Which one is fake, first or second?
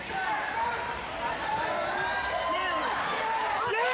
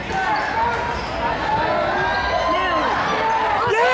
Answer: first